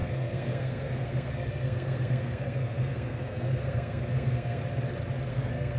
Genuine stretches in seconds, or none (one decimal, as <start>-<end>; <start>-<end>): 4.6-5.3